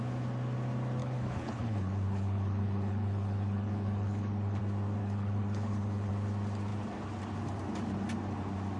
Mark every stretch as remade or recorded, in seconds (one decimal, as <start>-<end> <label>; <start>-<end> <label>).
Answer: 0.0-1.0 recorded; 1.0-4.6 remade; 4.6-5.0 recorded; 5.0-6.1 remade; 6.1-8.8 recorded